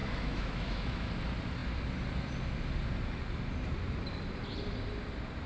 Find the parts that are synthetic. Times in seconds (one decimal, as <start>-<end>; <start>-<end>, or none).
0.0-1.1